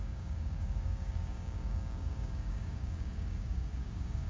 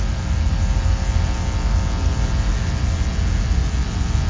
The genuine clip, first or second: second